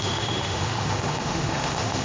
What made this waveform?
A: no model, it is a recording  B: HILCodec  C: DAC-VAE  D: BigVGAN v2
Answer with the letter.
C